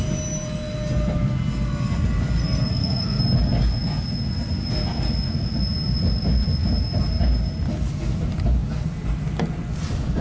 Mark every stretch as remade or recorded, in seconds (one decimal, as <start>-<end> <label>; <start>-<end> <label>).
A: 0.0-2.4 recorded; 2.4-3.2 remade; 3.2-10.2 recorded

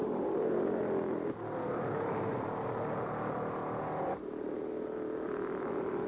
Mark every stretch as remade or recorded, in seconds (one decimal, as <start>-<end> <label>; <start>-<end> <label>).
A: 0.0-0.8 remade; 0.8-6.1 recorded

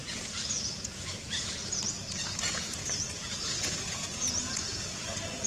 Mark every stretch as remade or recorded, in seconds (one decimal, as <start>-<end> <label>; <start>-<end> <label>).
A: 0.0-5.5 remade

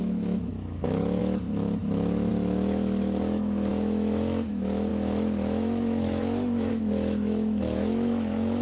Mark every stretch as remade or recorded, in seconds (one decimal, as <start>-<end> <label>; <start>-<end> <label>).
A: 0.0-8.6 remade

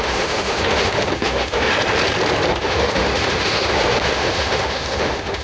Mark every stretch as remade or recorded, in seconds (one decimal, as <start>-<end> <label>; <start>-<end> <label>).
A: 0.0-1.7 remade; 1.7-2.6 recorded; 2.6-5.4 remade

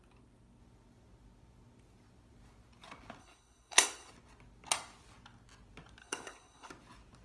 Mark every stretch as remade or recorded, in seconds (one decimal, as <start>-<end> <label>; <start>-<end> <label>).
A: 0.0-3.2 recorded; 3.2-4.1 remade; 4.1-6.0 recorded; 6.0-6.7 remade; 6.7-7.2 recorded

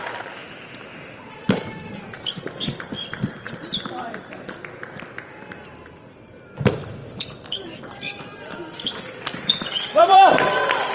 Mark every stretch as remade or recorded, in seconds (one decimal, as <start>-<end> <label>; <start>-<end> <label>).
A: 0.0-7.0 remade; 7.0-7.8 recorded; 7.8-10.9 remade

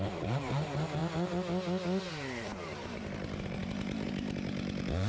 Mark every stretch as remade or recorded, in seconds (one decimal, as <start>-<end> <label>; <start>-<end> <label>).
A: 0.0-1.0 remade; 1.0-2.1 recorded; 2.1-5.1 remade